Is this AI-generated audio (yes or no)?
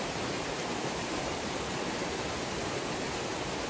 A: yes